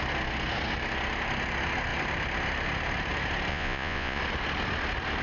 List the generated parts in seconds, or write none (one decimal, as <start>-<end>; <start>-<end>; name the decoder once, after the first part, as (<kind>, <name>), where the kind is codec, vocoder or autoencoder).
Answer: 3.5-4.2 (vocoder, Vocos)

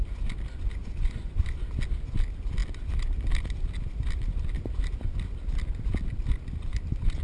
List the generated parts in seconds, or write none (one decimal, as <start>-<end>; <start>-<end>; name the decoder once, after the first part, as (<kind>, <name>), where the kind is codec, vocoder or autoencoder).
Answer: 0.8-1.4 (vocoder, Vocos)

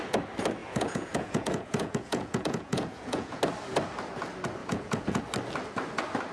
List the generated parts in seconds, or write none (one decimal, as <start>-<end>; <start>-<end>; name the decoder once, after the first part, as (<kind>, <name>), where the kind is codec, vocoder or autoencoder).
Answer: 0.6-3.4 (vocoder, Vocos); 4.6-5.2

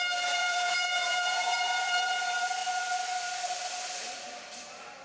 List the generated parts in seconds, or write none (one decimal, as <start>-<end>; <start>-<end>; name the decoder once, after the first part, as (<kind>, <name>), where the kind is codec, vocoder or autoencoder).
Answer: 0.4-1.6 (vocoder, Vocos)

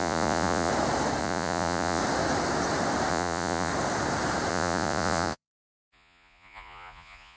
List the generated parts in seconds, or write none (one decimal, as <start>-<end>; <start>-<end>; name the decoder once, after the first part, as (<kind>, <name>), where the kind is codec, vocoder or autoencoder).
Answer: 0.0-0.7 (vocoder, Vocos); 1.2-2.0; 3.1-3.7; 4.5-7.4

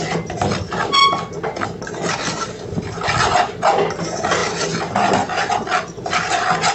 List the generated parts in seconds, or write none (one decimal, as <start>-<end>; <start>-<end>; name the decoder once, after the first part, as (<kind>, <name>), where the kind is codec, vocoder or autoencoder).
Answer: none

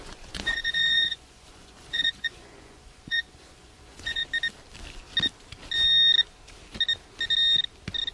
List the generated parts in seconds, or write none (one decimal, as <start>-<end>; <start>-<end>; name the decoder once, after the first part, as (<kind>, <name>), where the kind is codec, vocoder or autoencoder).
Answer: 0.0-4.2 (vocoder, Vocos)

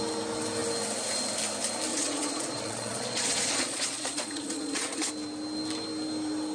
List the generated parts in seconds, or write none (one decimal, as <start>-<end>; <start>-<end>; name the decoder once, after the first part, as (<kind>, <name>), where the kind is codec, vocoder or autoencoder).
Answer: 1.9-5.1 (vocoder, Vocos)